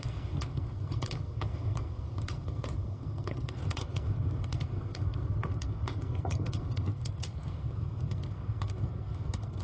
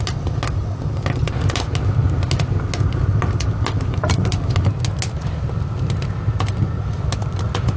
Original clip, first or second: second